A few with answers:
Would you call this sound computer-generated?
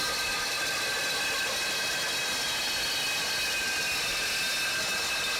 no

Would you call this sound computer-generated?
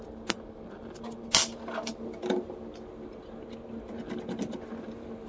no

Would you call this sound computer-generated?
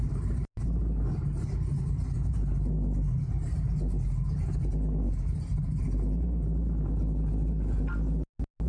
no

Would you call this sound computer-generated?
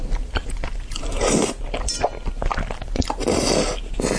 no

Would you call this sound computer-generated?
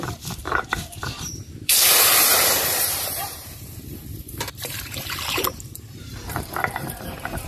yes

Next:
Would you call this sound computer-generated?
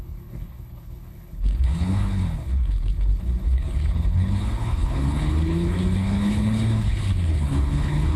yes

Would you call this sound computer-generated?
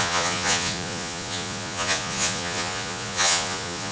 yes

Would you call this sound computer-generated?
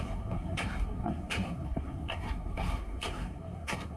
yes